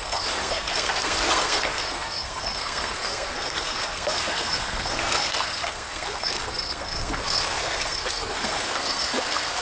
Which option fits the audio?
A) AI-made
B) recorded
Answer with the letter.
A